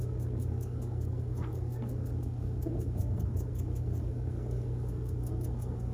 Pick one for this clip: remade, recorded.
remade